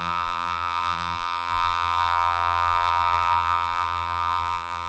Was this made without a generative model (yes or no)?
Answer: no